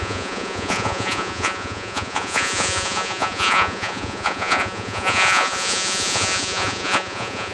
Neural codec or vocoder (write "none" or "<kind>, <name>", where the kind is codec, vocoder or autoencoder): vocoder, Vocos